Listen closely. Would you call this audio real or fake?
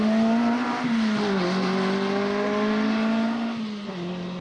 real